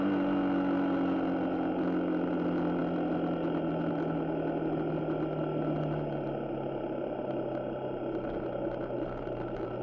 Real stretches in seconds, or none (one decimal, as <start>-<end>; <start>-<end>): 0.0-9.8